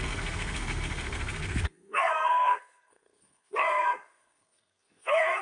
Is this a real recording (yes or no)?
no